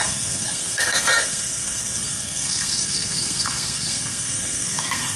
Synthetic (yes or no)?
yes